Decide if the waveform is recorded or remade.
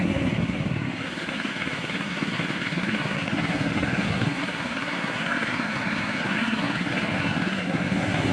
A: remade